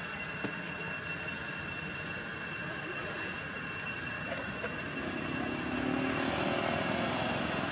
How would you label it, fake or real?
real